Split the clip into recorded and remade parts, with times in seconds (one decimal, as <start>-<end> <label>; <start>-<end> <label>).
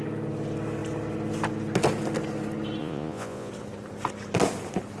0.0-2.8 recorded; 2.8-3.5 remade; 3.5-5.0 recorded